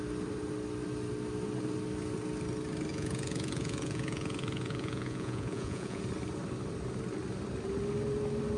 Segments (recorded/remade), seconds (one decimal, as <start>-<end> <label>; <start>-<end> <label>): 0.0-2.9 recorded; 2.9-6.0 remade; 6.0-8.6 recorded